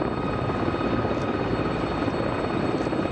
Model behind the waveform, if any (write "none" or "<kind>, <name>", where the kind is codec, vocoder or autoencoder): none